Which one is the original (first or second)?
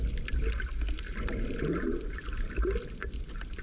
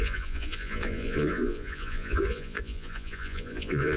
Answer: first